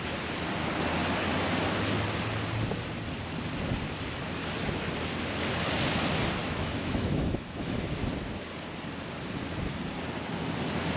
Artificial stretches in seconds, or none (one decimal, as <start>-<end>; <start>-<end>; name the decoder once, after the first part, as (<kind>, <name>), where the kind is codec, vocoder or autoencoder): 6.4-7.9 (autoencoder, DAC-VAE)